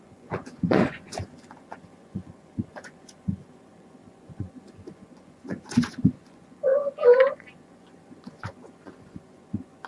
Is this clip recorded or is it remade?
remade